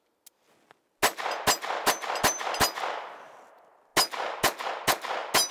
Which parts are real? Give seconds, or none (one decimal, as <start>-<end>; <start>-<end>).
0.0-5.5